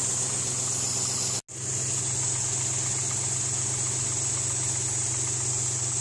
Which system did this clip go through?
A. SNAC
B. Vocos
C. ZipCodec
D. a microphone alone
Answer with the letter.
D